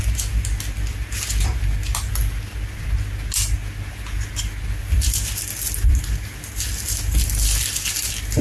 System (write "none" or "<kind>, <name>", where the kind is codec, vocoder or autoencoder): none